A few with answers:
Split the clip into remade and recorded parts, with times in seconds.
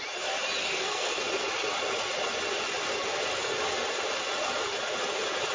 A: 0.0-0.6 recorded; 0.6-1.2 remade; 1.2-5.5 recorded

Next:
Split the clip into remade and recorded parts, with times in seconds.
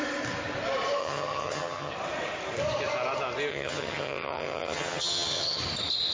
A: 0.0-1.0 recorded; 1.0-1.9 remade; 1.9-3.5 recorded; 3.5-5.6 remade; 5.6-6.1 recorded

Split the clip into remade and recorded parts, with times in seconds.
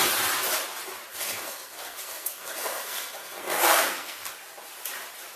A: 0.0-1.1 recorded; 1.1-4.3 remade; 4.3-5.4 recorded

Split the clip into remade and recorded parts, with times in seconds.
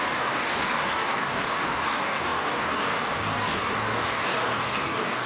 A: 0.0-5.3 remade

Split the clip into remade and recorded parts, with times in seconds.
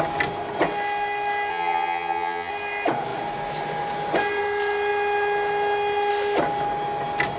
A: 0.0-1.5 recorded; 1.5-2.5 remade; 2.5-7.4 recorded